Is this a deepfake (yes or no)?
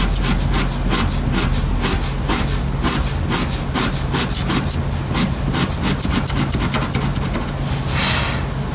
no